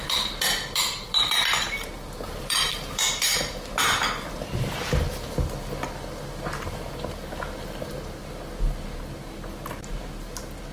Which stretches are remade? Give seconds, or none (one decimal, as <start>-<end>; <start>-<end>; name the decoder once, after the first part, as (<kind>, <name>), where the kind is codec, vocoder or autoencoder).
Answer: 0.0-5.1 (vocoder, BigVGAN v2)

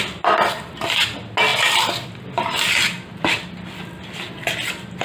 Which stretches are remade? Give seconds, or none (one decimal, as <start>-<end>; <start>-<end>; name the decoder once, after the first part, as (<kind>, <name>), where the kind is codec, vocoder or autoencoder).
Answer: none

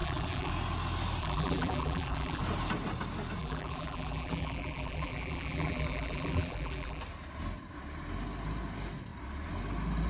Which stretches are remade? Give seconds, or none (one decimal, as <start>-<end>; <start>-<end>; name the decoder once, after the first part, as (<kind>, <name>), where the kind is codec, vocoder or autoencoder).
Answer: 0.0-0.5 (vocoder, BigVGAN v2); 1.2-2.4; 3.4-7.0

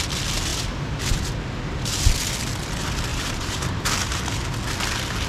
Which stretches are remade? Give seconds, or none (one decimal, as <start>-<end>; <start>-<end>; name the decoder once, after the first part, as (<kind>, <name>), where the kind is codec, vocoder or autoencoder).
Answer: 3.1-3.8 (vocoder, BigVGAN v2)

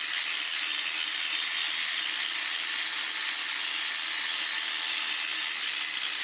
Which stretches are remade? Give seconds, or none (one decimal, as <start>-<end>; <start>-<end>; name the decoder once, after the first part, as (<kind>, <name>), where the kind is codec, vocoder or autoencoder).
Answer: none

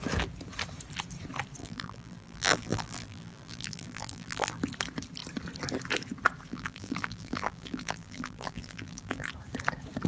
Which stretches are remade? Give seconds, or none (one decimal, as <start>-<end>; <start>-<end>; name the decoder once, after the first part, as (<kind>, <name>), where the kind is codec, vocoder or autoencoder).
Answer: 1.6-4.6 (vocoder, BigVGAN v2); 6.5-9.3

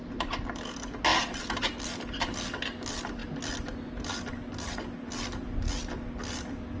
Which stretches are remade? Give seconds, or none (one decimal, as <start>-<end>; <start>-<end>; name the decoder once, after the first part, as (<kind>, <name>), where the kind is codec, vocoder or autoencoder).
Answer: 1.1-1.6 (vocoder, BigVGAN v2)